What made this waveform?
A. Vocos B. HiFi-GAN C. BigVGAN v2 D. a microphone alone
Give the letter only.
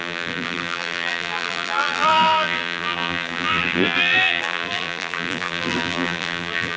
C